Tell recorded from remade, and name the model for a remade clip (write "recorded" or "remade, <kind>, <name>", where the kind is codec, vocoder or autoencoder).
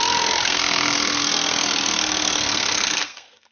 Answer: remade, codec, SNAC